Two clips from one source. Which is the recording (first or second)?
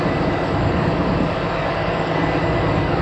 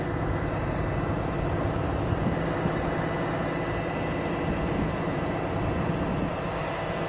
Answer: second